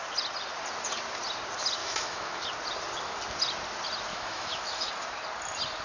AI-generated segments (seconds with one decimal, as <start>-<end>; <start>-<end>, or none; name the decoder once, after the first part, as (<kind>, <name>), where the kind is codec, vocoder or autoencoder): 1.8-2.4 (autoencoder, DAC-VAE); 4.1-4.9